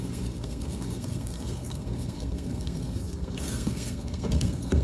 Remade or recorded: remade